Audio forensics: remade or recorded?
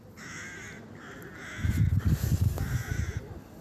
remade